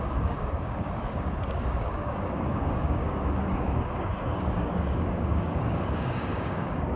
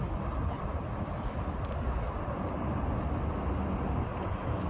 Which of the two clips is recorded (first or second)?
second